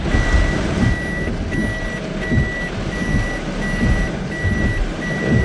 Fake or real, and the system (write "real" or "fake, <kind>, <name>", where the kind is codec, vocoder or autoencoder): real